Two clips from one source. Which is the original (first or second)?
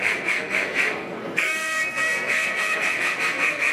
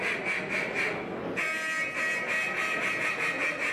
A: second